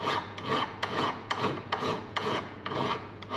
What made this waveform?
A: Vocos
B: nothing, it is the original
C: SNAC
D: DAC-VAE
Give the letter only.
A